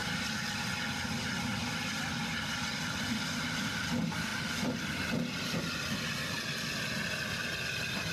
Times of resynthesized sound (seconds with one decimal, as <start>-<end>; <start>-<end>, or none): none